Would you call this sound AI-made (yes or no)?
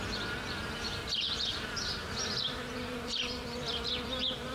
yes